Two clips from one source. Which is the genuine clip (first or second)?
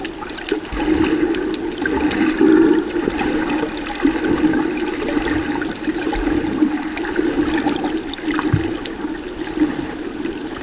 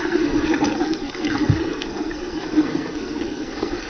first